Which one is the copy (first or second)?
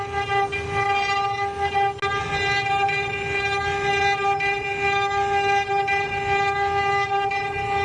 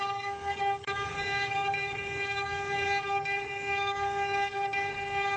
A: second